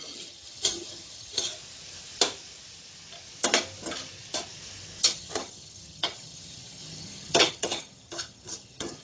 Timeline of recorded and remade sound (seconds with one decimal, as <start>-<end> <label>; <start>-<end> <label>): 0.0-1.5 remade; 1.5-5.0 recorded; 5.0-9.0 remade